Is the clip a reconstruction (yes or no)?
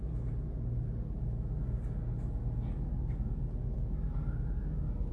no